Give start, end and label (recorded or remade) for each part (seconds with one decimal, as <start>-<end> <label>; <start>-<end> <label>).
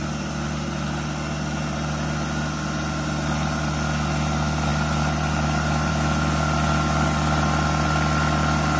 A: 0.0-8.8 recorded